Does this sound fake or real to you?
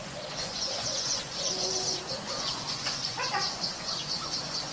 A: fake